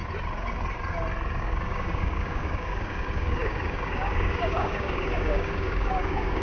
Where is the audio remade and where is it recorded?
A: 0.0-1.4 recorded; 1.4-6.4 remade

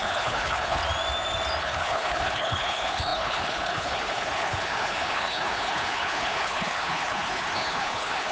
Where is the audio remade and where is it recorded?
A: 0.0-0.8 remade; 0.8-1.6 recorded; 1.6-8.3 remade

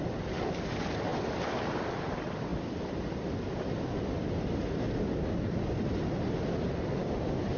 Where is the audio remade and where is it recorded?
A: 0.0-1.1 remade; 1.1-2.1 recorded; 2.1-2.5 remade; 2.5-3.1 recorded; 3.1-4.6 remade; 4.6-5.2 recorded; 5.2-7.6 remade

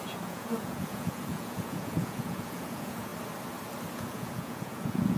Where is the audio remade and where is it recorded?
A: 0.0-3.1 remade; 3.1-3.9 recorded; 3.9-5.2 remade

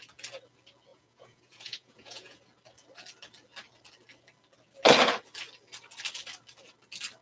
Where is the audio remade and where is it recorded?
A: 0.0-0.9 recorded; 0.9-2.4 remade; 2.4-7.2 recorded